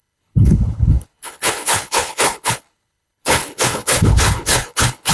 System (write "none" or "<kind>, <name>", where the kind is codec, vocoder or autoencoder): codec, HILCodec